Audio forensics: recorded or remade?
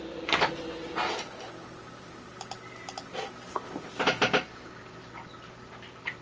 recorded